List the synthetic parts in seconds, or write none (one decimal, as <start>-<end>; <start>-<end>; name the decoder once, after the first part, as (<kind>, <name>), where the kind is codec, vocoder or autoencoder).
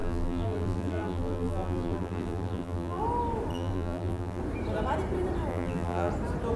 0.0-3.0 (vocoder, BigVGAN v2); 3.5-4.4; 5.5-6.1